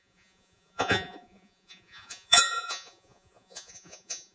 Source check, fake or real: fake